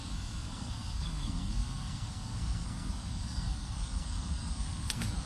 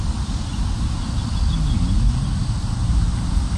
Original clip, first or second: second